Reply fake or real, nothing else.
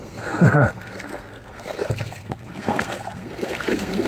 fake